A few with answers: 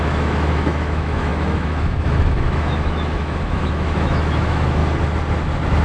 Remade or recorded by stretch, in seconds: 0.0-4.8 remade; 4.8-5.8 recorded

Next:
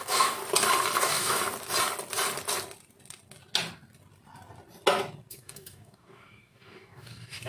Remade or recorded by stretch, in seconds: 0.0-0.4 remade; 0.4-1.0 recorded; 1.0-1.4 remade; 1.4-5.3 recorded; 5.3-7.5 remade

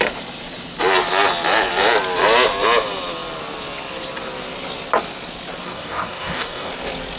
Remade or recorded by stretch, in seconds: 0.0-5.6 recorded; 5.6-6.7 remade; 6.7-7.2 recorded

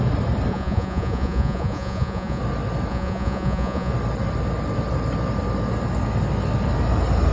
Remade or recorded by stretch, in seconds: 0.0-0.5 recorded; 0.5-2.4 remade; 2.4-2.9 recorded; 2.9-3.9 remade; 3.9-7.3 recorded

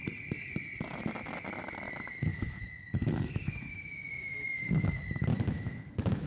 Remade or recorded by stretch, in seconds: 0.0-2.3 recorded; 2.3-6.3 remade

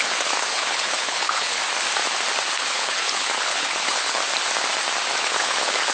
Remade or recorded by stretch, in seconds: 0.0-1.6 remade; 1.6-2.6 recorded; 2.6-4.2 remade; 4.2-5.2 recorded; 5.2-5.9 remade